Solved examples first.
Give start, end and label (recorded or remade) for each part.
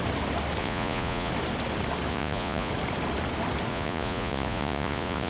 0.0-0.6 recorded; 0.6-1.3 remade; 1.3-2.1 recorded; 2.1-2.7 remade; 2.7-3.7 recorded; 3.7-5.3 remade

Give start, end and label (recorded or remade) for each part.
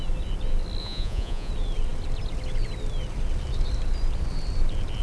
0.0-0.8 recorded; 0.8-1.5 remade; 1.5-5.0 recorded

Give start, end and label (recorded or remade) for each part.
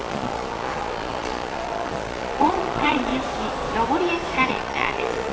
0.0-3.1 remade; 3.1-4.5 recorded; 4.5-5.3 remade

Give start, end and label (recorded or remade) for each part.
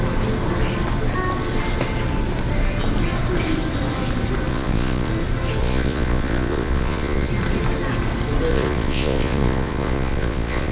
0.0-4.5 recorded; 4.5-5.1 remade; 5.1-5.6 recorded; 5.6-7.3 remade; 7.3-8.5 recorded; 8.5-10.7 remade